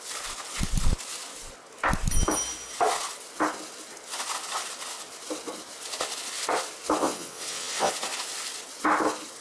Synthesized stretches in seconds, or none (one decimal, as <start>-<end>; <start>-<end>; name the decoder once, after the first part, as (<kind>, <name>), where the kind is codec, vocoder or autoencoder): 7.0-7.9 (vocoder, WaveNeXt)